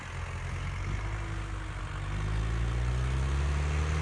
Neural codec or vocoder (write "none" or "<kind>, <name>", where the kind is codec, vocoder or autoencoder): none